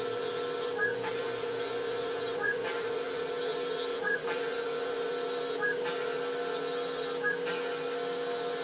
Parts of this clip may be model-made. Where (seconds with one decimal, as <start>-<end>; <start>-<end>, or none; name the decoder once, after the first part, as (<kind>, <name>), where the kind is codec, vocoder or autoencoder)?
0.9-3.2 (vocoder, Vocos); 3.9-5.1